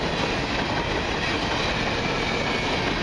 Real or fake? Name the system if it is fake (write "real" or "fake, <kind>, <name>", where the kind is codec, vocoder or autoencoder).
real